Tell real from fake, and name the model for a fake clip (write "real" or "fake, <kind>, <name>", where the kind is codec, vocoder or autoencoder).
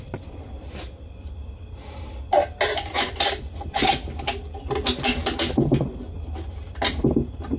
real